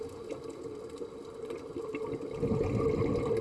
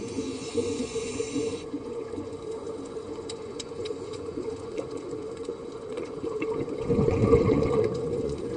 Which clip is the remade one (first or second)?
second